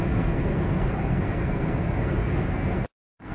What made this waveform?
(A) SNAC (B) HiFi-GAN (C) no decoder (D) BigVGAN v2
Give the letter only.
A